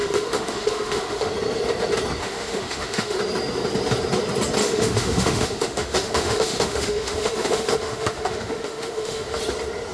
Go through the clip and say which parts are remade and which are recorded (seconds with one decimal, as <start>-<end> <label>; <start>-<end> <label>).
0.0-1.3 remade; 1.3-2.2 recorded; 2.2-3.2 remade; 3.2-4.6 recorded; 4.6-9.4 remade; 9.4-9.9 recorded